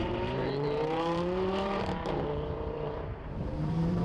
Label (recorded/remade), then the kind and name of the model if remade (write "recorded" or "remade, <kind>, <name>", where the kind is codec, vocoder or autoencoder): remade, vocoder, BigVGAN v2